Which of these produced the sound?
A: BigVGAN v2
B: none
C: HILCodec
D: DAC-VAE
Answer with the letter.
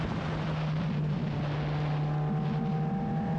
B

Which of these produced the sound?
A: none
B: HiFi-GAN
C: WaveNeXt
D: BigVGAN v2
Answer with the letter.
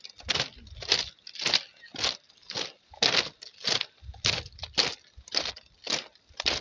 A